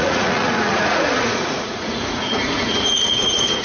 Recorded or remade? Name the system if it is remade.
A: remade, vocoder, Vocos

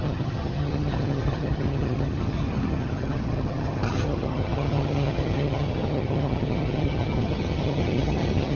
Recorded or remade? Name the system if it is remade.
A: remade, vocoder, HiFi-GAN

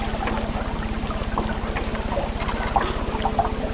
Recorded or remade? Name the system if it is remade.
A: recorded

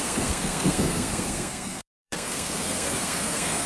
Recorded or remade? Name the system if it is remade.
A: remade, codec, SNAC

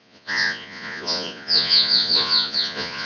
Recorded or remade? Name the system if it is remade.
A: remade, vocoder, Vocos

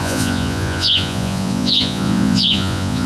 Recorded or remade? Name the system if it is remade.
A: remade, vocoder, Vocos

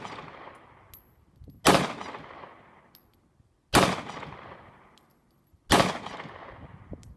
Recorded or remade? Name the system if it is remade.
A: recorded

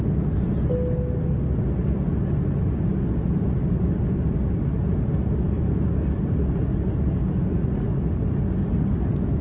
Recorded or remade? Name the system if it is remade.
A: recorded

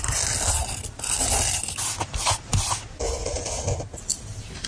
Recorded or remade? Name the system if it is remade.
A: recorded